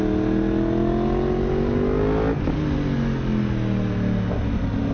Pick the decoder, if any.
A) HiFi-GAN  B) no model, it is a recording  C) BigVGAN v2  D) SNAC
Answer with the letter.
B